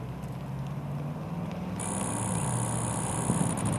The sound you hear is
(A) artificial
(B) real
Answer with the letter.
B